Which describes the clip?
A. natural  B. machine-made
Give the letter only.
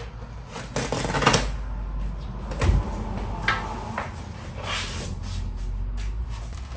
A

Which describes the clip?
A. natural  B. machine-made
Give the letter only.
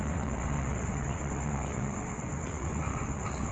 B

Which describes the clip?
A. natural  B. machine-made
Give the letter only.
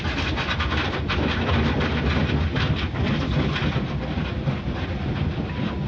A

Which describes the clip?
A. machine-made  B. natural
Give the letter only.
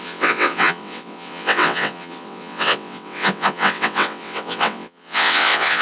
A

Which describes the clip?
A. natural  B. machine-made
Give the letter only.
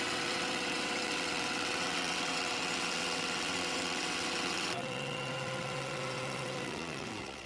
B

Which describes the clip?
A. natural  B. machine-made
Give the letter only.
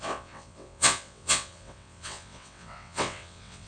B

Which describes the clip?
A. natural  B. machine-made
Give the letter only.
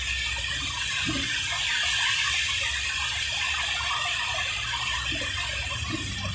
A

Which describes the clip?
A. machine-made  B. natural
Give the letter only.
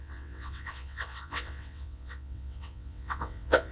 A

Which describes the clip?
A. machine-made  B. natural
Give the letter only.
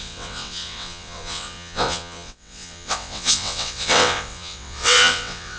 A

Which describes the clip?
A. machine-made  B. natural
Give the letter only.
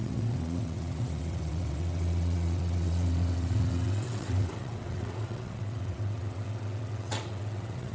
A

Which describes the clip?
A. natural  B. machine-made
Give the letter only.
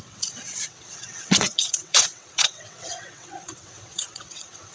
B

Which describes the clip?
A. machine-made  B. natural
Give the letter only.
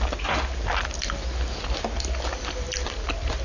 B